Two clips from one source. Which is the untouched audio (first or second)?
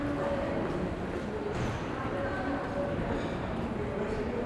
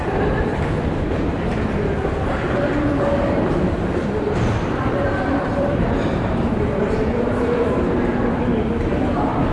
first